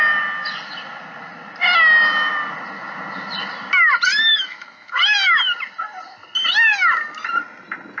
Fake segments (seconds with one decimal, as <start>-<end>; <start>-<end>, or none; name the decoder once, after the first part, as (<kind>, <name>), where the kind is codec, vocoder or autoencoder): 4.3-5.0 (autoencoder, DAC-VAE)